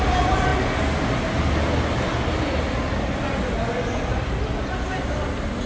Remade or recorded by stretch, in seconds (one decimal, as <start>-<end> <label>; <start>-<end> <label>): 0.0-5.7 recorded